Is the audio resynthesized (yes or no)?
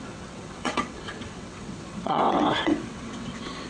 yes